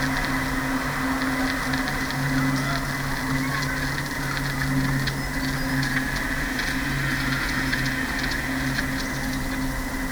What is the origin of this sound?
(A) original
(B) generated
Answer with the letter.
A